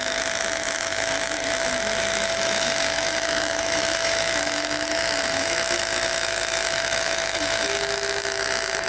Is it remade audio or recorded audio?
remade